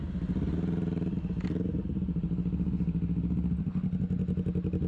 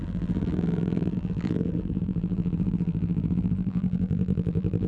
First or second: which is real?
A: first